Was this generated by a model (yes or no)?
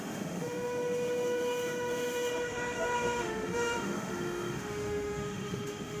yes